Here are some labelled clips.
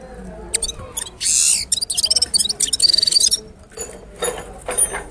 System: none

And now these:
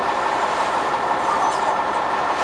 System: none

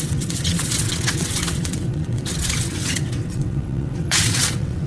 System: vocoder, WaveNeXt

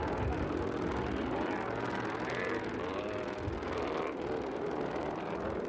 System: none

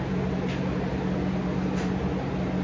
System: none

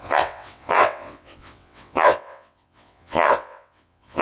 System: vocoder, WaveNeXt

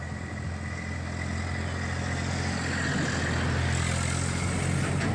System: none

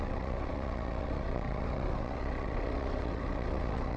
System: vocoder, WaveNeXt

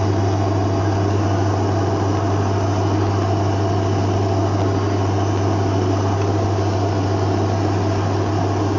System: none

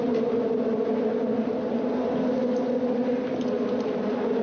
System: none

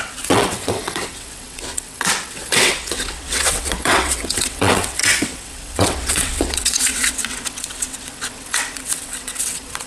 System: vocoder, WaveNeXt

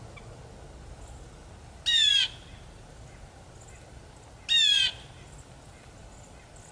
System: none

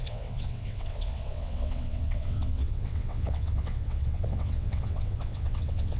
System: vocoder, WaveNeXt